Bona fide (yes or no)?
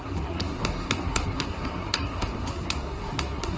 no